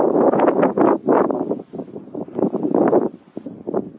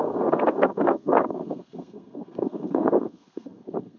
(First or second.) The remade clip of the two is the second